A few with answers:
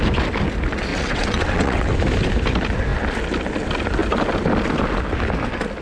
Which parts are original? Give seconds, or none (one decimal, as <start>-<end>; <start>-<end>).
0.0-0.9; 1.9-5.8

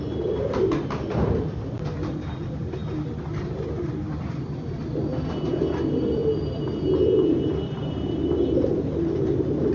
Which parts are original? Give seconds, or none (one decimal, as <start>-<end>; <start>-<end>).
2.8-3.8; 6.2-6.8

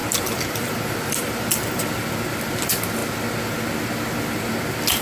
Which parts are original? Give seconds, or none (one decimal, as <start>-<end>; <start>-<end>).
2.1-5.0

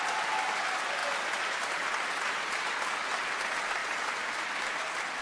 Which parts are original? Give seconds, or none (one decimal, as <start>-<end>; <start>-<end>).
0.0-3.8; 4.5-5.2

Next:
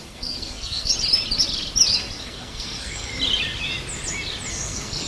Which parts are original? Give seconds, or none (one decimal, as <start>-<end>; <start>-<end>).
0.9-2.2; 3.1-4.5

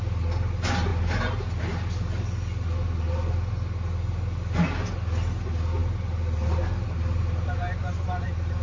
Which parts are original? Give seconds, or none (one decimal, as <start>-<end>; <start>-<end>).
0.0-8.6

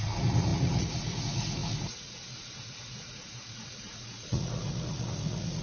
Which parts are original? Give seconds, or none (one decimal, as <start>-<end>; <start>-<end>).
none

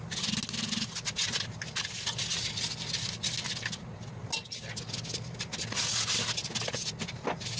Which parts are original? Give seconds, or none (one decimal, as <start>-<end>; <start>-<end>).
0.0-7.6